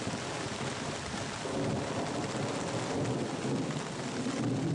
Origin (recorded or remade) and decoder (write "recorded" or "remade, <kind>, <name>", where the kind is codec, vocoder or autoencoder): recorded